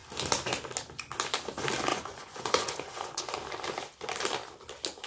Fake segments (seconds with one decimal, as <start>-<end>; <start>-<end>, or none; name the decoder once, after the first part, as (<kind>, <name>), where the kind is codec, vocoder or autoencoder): 1.9-3.2 (vocoder, Vocos)